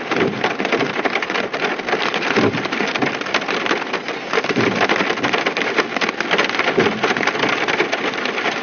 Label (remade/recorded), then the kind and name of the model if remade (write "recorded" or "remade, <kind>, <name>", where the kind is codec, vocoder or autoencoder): recorded